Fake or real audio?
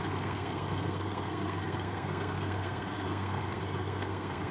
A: fake